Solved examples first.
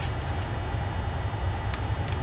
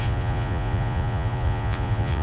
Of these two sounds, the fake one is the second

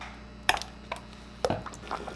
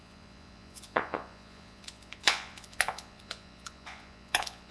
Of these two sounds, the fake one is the second